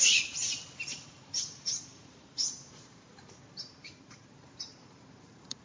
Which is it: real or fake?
fake